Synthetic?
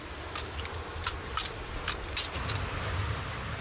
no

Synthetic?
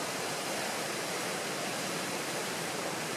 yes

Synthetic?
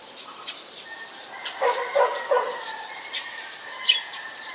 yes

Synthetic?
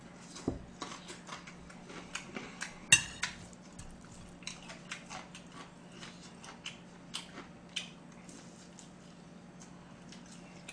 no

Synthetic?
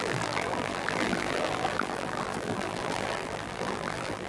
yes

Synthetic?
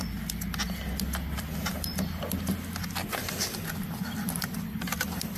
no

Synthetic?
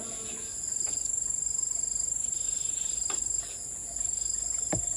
no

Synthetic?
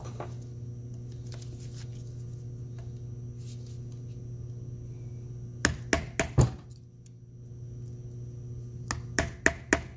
no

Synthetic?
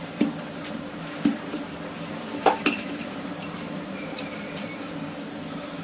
yes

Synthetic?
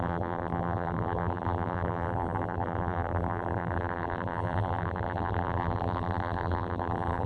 yes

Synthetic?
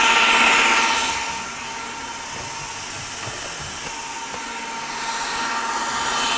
no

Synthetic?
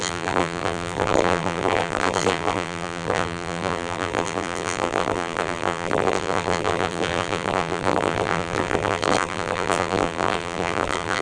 yes